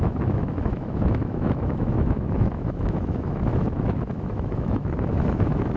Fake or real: fake